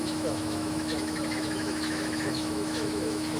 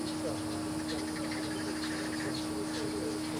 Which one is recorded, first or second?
second